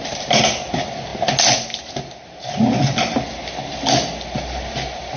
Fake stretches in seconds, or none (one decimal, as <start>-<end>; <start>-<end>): none